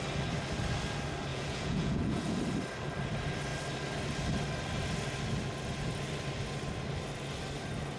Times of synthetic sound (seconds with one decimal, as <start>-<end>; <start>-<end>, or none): 1.3-2.4